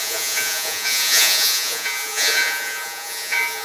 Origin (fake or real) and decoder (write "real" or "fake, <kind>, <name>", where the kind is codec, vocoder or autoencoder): fake, vocoder, Vocos